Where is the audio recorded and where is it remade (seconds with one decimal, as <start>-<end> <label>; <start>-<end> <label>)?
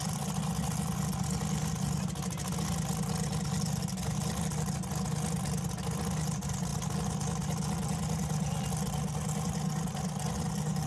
0.0-10.9 recorded